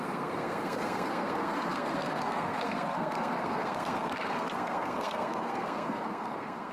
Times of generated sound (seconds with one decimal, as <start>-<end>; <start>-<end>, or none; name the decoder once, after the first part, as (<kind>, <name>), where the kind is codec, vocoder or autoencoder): 0.0-6.7 (codec, SNAC)